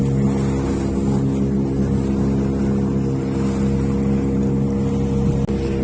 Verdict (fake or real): real